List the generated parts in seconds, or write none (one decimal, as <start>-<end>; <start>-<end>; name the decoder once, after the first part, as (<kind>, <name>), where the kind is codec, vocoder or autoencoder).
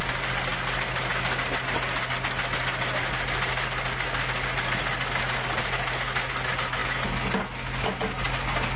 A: none